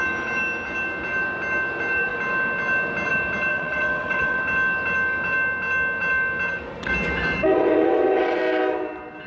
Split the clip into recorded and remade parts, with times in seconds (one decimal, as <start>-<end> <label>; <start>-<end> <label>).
0.0-3.5 recorded; 3.5-4.4 remade; 4.4-7.5 recorded; 7.5-8.4 remade; 8.4-9.3 recorded